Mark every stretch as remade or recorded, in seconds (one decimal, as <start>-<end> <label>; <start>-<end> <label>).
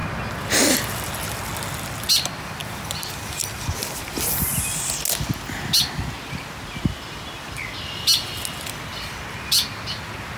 0.0-10.4 recorded